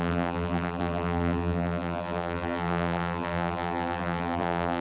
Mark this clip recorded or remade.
remade